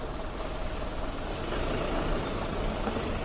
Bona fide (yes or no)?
yes